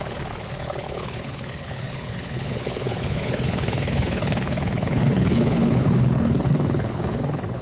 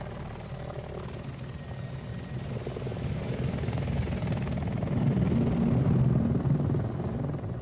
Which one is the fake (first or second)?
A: first